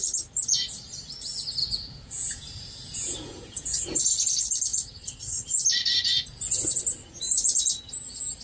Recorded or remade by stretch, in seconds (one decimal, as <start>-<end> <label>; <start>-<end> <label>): 0.0-1.6 recorded; 1.6-4.1 remade; 4.1-4.7 recorded; 4.7-5.5 remade; 5.5-6.1 recorded; 6.1-6.8 remade; 6.8-8.4 recorded